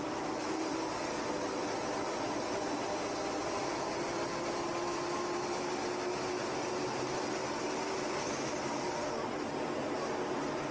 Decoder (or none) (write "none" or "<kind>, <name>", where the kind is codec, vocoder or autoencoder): none